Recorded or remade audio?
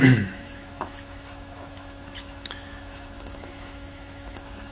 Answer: remade